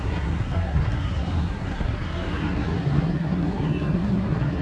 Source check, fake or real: fake